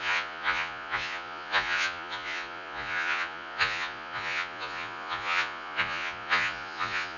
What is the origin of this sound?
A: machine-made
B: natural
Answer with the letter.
A